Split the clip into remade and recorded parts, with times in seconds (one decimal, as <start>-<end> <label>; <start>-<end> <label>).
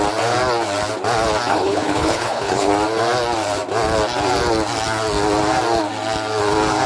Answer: 0.0-1.5 recorded; 1.5-2.7 remade; 2.7-6.9 recorded